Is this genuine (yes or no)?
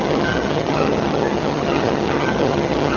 no